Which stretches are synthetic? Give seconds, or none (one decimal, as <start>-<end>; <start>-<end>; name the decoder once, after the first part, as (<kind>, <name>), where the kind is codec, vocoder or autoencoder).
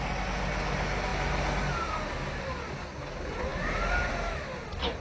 none